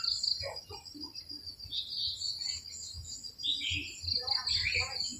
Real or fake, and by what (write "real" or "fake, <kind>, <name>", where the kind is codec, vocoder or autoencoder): real